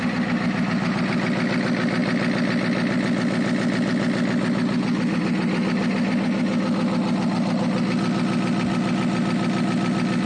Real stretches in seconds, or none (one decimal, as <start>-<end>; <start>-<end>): 0.0-10.3